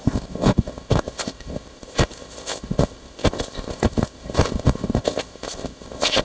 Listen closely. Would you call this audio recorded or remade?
remade